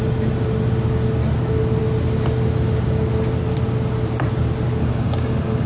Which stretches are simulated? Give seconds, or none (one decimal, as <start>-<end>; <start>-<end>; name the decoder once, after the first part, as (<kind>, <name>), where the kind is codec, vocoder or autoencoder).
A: 4.8-5.7 (codec, DAC)